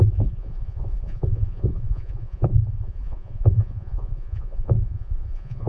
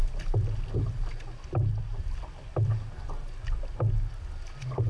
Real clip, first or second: second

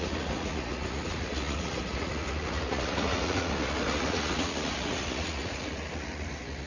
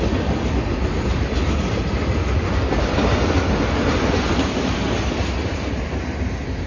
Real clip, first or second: second